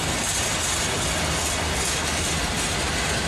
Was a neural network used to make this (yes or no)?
no